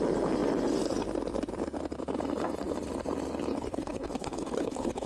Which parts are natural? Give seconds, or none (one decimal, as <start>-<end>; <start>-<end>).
0.0-3.5